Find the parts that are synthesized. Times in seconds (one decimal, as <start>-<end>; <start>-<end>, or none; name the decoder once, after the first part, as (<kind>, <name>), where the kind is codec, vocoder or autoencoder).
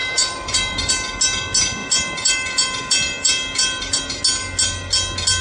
0.0-0.9 (vocoder, BigVGAN v2); 1.8-4.2